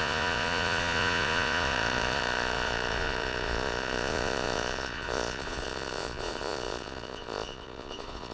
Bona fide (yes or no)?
no